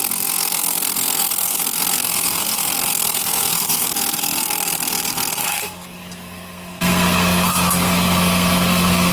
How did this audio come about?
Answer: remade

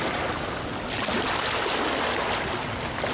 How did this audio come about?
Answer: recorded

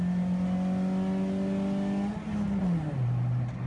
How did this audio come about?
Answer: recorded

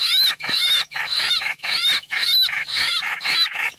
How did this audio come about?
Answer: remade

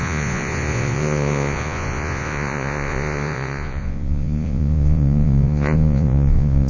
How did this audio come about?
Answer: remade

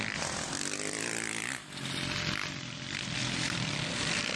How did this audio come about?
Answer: remade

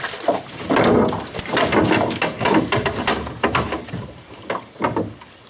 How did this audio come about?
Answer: recorded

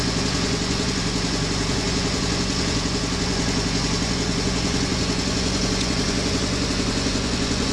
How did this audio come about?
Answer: remade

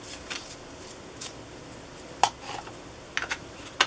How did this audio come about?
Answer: recorded